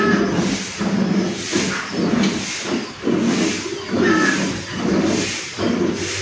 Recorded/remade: recorded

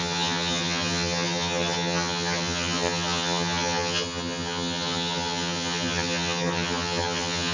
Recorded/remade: remade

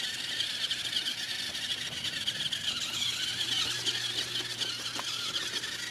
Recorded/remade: recorded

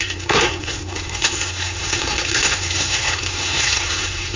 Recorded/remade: remade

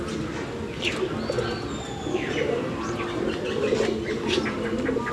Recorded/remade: recorded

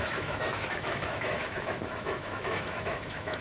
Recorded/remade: remade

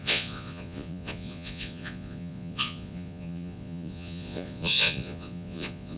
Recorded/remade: remade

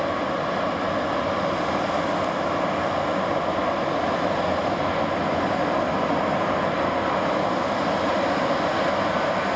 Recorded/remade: recorded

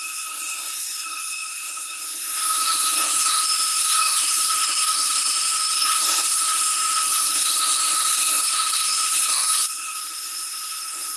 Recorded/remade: remade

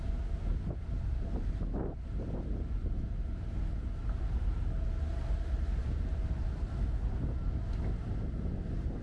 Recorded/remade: recorded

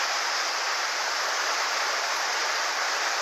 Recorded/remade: recorded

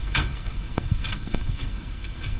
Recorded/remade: remade